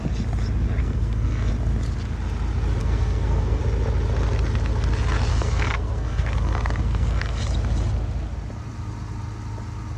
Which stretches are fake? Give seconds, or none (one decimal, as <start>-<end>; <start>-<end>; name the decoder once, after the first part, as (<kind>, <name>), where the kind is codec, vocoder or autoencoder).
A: 0.8-1.5 (codec, SNAC); 2.8-3.6; 5.3-7.4